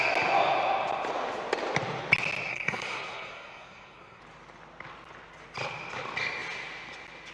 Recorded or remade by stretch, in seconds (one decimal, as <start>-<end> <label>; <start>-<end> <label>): 0.0-2.5 recorded; 2.5-4.2 remade; 4.2-7.3 recorded